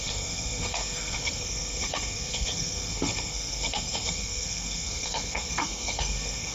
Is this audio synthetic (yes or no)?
yes